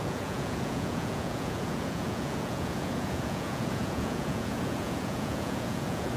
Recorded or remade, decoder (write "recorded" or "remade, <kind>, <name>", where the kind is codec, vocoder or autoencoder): remade, vocoder, Vocos